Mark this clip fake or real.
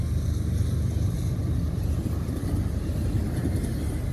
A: real